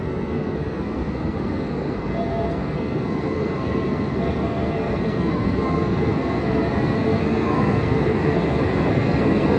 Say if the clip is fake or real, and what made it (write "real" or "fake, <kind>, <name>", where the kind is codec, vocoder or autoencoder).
fake, codec, SNAC